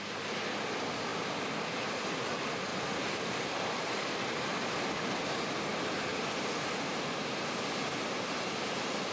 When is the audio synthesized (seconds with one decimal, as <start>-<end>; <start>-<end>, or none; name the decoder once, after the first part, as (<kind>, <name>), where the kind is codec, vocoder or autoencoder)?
2.7-4.1 (vocoder, BigVGAN v2); 6.1-7.3